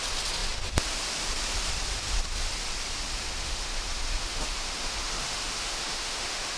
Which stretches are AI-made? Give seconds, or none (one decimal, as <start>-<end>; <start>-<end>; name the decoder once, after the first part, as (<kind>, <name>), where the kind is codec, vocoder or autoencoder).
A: 3.2-6.6 (autoencoder, DAC-VAE)